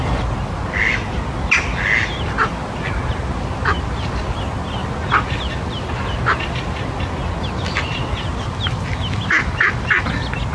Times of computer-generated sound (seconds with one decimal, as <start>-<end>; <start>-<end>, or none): none